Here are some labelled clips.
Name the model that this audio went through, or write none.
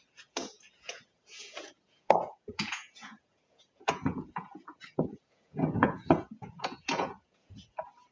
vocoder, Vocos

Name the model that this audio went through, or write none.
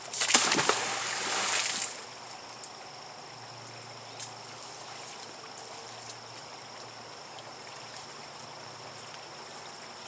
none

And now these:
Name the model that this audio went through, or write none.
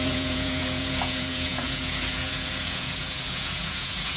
vocoder, Vocos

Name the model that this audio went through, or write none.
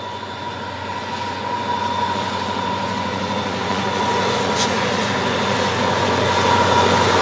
vocoder, Vocos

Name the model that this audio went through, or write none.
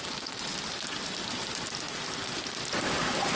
none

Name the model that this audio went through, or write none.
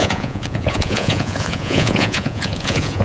vocoder, Vocos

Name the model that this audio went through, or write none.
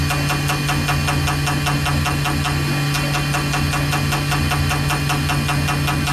none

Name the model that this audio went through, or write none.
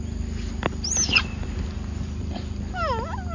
none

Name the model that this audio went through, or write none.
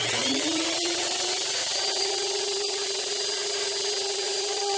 vocoder, Vocos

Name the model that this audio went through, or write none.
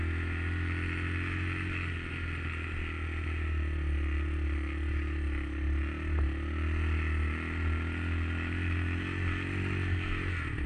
none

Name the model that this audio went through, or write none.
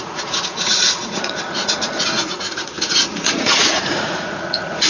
vocoder, Vocos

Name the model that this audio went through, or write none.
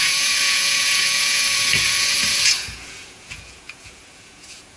vocoder, Vocos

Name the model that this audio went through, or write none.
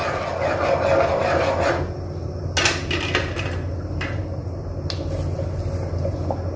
none